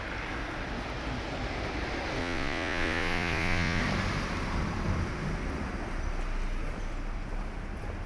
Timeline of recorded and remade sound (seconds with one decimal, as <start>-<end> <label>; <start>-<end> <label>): 0.0-2.2 recorded; 2.2-3.8 remade; 3.8-8.1 recorded